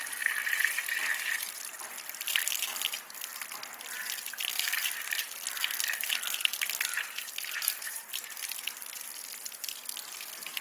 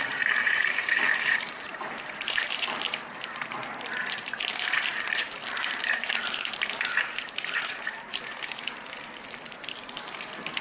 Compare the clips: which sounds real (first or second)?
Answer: first